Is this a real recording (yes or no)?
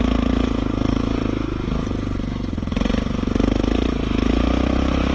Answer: yes